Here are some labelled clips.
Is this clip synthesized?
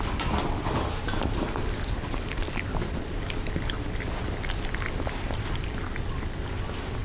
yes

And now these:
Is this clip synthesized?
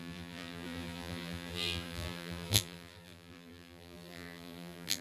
yes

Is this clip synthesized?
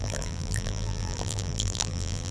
yes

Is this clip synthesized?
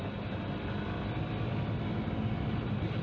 no